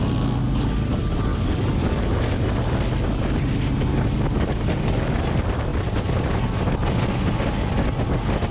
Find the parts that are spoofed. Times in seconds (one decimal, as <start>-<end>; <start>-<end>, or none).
1.3-2.5; 3.9-5.3